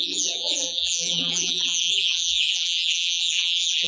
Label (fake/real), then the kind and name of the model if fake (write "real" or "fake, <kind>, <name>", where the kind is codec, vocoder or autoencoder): fake, vocoder, BigVGAN v2